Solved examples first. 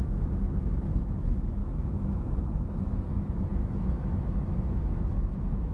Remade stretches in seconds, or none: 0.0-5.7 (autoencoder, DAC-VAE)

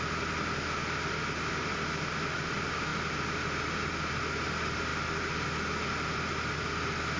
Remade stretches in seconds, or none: none

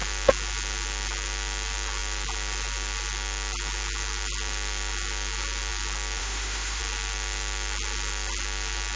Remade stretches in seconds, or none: 6.2-6.8 (autoencoder, DAC-VAE)